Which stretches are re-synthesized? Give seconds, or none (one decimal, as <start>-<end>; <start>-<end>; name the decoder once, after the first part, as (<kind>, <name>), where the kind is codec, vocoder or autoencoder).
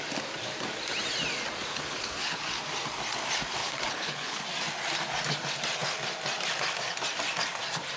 1.7-2.6 (codec, HILCodec); 3.6-4.4